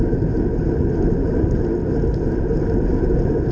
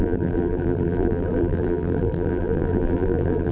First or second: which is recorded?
first